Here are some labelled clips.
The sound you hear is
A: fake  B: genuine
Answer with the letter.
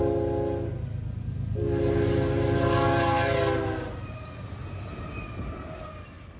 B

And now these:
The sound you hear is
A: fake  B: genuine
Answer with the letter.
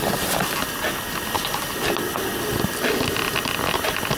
B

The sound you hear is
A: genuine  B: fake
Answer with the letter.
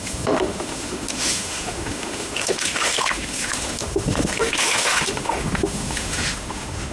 B